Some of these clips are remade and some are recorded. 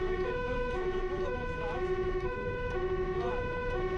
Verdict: remade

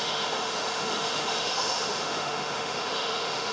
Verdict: remade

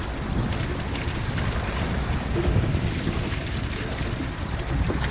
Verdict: recorded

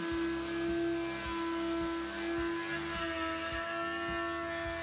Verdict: recorded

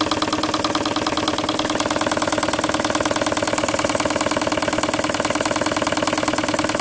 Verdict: recorded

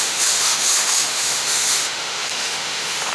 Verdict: remade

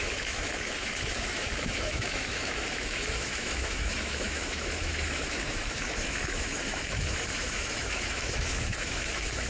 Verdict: remade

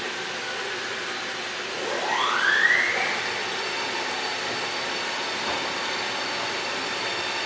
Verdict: recorded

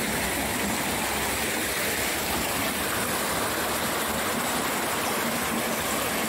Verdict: recorded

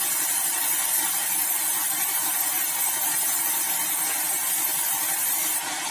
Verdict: recorded